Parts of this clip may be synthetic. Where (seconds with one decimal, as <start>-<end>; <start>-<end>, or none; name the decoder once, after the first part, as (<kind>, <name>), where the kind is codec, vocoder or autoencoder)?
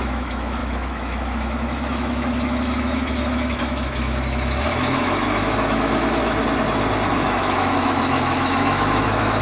0.0-6.2 (autoencoder, DAC-VAE); 7.1-9.4